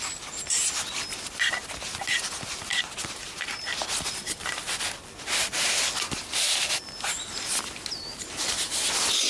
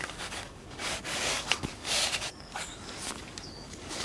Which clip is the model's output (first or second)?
second